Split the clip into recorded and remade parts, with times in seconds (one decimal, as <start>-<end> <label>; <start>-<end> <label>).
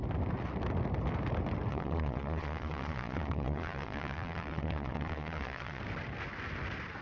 0.0-1.7 recorded; 1.7-5.8 remade; 5.8-7.0 recorded